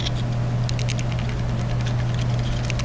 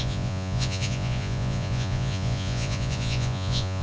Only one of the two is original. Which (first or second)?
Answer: first